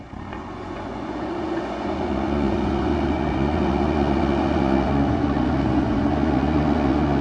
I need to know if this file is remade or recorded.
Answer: remade